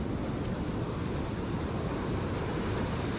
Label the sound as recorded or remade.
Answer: recorded